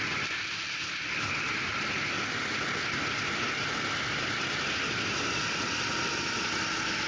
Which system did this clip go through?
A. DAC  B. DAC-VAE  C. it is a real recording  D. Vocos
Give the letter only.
C